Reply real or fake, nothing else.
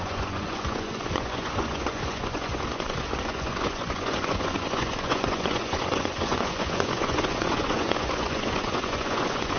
fake